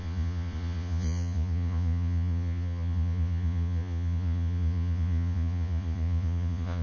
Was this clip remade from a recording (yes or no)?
yes